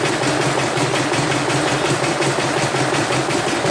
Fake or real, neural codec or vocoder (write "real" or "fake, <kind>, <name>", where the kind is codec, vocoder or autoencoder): real